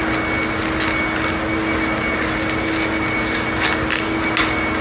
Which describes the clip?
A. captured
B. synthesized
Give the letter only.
A